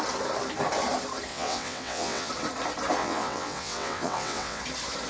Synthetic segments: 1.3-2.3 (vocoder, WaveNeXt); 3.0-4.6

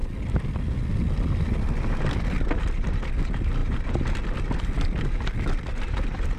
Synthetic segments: none

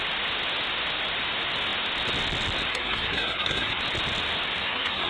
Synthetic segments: 2.7-3.8 (codec, SNAC); 4.6-5.1

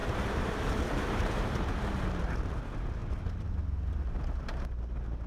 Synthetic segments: 0.0-1.4 (vocoder, BigVGAN v2)

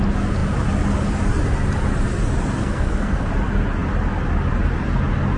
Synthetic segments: 2.6-3.3 (codec, SNAC)